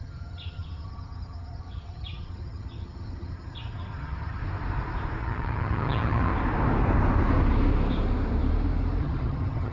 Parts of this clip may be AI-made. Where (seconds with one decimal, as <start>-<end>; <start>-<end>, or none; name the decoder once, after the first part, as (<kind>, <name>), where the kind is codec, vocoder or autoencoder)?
0.0-4.4 (vocoder, HiFi-GAN); 5.2-6.3; 9.0-9.7